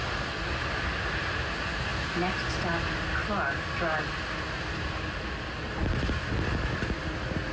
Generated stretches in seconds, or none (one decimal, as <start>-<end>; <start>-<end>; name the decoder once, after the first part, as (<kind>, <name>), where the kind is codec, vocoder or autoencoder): none